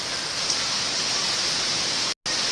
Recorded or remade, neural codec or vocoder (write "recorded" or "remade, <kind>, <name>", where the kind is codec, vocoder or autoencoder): recorded